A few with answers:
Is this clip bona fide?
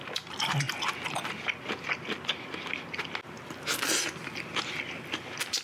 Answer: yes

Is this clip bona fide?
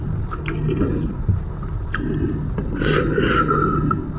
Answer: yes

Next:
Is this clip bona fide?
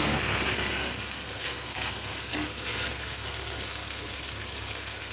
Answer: no